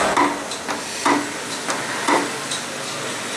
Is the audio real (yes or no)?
yes